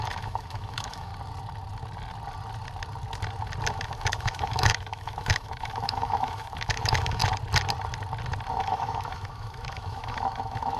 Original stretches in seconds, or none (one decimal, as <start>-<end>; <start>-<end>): 1.1-3.7; 7.2-8.5